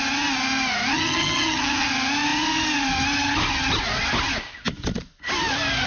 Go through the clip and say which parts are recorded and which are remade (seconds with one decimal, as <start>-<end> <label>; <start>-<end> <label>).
0.0-0.9 recorded; 0.9-1.9 remade; 1.9-5.9 recorded